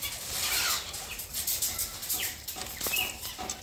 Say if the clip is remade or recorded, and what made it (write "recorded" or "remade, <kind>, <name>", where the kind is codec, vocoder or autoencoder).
remade, vocoder, BigVGAN v2